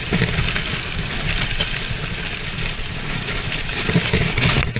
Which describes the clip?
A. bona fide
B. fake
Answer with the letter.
A